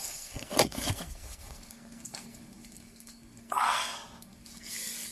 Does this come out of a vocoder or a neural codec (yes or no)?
yes